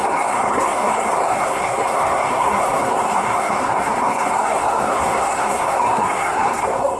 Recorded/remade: remade